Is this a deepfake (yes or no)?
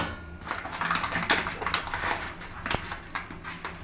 no